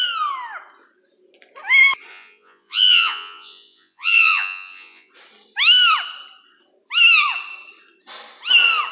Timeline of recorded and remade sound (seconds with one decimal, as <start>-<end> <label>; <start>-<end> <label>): 0.0-2.1 recorded; 2.1-5.1 remade; 5.1-8.9 recorded